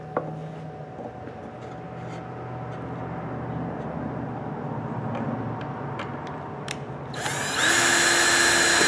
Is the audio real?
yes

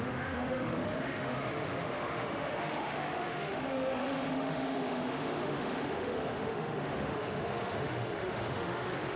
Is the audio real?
no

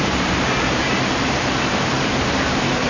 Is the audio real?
no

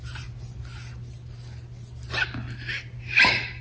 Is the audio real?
yes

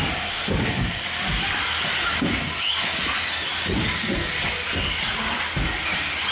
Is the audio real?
yes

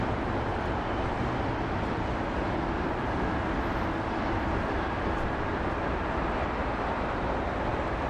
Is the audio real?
yes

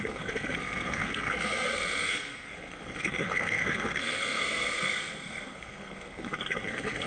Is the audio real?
no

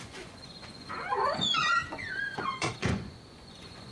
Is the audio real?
no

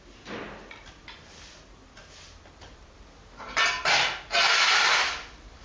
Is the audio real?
yes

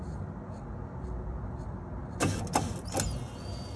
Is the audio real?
yes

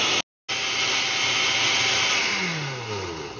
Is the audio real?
yes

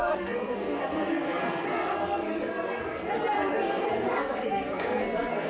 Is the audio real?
no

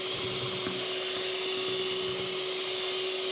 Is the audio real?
yes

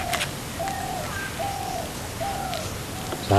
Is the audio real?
yes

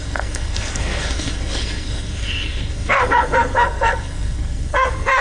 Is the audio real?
no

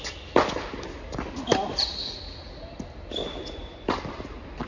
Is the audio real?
yes